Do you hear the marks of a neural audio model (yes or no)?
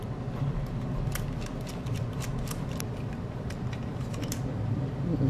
no